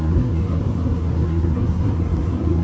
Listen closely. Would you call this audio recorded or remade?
remade